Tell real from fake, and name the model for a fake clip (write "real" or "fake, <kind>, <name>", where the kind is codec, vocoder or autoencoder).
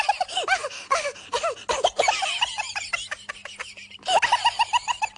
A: real